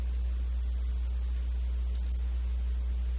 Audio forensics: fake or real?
real